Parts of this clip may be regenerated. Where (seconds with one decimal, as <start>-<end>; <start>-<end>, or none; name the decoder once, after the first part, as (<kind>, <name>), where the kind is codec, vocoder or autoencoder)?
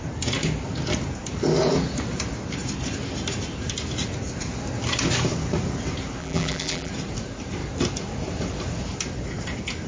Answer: 6.2-6.9 (vocoder, BigVGAN v2)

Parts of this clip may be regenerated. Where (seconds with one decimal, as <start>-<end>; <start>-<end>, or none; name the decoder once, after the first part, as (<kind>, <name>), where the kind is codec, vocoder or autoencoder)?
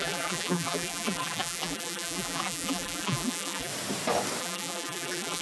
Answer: 0.0-3.7 (vocoder, BigVGAN v2); 4.4-5.4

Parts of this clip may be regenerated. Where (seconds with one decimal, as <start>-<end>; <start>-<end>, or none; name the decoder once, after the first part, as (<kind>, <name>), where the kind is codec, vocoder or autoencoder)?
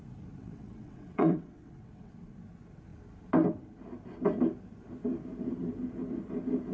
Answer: 0.4-2.1 (vocoder, WaveNeXt)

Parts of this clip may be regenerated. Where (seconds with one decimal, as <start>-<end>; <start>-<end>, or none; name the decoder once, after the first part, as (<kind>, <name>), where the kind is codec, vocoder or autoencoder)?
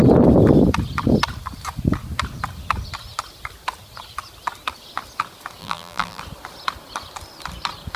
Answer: 5.6-6.2 (vocoder, BigVGAN v2)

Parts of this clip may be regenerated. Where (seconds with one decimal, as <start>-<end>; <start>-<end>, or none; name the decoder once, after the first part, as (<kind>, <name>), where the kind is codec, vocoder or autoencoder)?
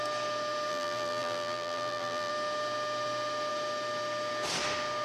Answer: 0.7-2.3 (vocoder, BigVGAN v2)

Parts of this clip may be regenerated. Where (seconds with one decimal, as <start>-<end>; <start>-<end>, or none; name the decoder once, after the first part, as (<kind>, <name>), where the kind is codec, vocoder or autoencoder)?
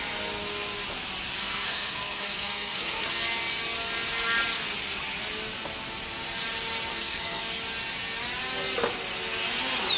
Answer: 1.4-3.1 (codec, SNAC); 6.9-7.4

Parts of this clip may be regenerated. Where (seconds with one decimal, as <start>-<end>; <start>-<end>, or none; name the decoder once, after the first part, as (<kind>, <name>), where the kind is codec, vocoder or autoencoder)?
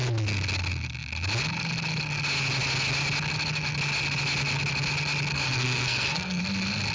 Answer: 5.3-6.4 (codec, SNAC)